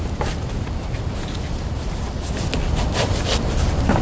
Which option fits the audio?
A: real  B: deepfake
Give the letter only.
A